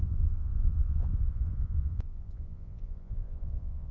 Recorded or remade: remade